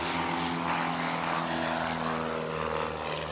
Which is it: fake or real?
real